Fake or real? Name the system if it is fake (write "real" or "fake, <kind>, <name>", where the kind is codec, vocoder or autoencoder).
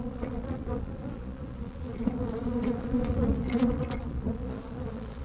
fake, vocoder, Vocos